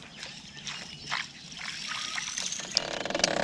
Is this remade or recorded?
recorded